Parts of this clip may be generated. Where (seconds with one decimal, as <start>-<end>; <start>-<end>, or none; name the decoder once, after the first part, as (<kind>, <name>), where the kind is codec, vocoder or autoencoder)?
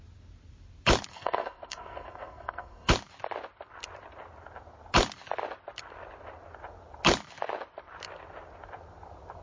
1.1-2.9 (codec, SNAC)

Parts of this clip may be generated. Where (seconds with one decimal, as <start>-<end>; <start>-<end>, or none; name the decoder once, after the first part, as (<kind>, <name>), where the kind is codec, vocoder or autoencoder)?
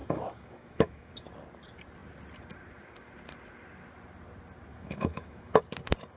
0.0-1.1 (autoencoder, DAC-VAE); 4.7-5.6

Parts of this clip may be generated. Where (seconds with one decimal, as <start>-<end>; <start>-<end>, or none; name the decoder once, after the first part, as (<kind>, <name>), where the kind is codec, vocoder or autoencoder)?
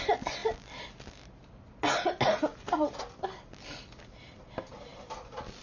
2.5-4.0 (vocoder, BigVGAN v2); 4.9-5.6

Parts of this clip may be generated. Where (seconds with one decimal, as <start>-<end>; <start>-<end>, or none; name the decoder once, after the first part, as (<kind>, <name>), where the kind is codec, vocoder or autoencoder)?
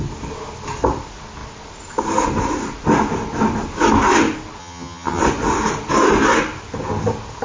4.6-5.2 (vocoder, HiFi-GAN)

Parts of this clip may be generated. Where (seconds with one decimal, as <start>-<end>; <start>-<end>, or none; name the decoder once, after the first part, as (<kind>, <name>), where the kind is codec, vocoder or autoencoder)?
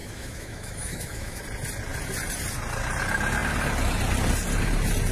0.0-1.4 (autoencoder, DAC-VAE)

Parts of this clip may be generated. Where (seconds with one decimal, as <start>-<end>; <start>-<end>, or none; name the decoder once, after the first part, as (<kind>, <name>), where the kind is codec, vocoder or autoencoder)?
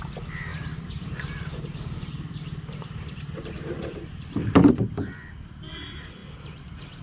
0.5-4.7 (vocoder, BigVGAN v2)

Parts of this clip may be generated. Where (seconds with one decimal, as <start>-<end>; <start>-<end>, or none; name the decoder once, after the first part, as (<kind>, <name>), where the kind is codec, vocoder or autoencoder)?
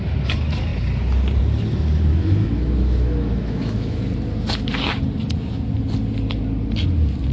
2.1-4.1 (autoencoder, DAC-VAE)